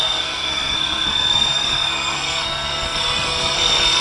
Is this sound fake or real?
fake